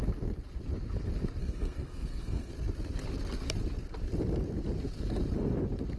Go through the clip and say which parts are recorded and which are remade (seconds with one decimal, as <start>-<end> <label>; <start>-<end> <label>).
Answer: 0.0-1.4 recorded; 1.4-2.5 remade; 2.5-6.0 recorded